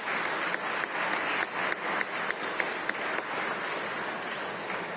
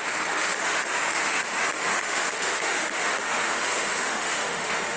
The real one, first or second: first